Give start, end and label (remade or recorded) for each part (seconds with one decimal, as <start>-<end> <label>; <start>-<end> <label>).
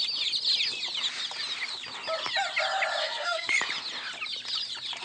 0.0-3.0 recorded; 3.0-3.5 remade; 3.5-5.0 recorded